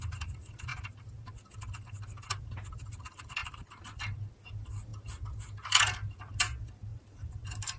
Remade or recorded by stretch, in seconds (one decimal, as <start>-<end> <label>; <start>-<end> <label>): 0.0-3.4 recorded; 3.4-4.1 remade; 4.1-6.9 recorded; 6.9-7.8 remade